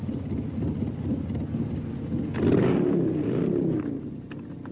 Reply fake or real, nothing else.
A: real